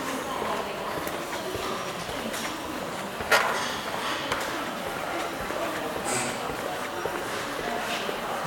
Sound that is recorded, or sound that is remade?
recorded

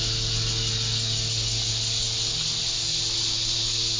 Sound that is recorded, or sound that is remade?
recorded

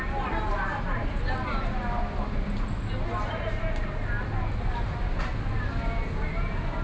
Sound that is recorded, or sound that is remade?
recorded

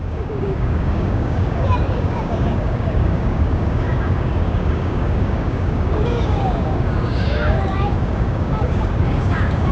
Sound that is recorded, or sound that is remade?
remade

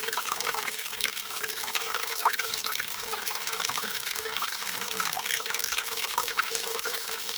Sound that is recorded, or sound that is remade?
remade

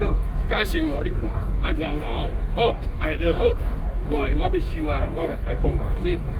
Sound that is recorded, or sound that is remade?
remade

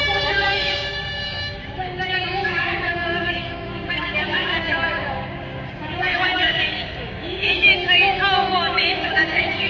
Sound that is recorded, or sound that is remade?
remade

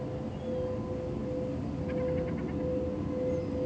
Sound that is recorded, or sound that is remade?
recorded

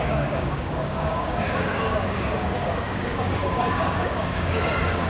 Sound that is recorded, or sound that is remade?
remade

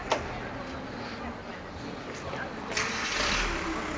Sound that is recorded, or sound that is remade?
recorded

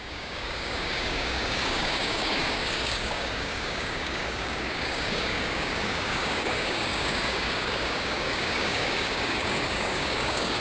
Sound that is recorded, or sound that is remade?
remade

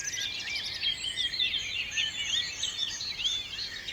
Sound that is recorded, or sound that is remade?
recorded